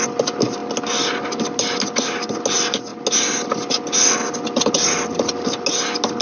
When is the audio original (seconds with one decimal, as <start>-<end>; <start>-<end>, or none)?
0.0-6.2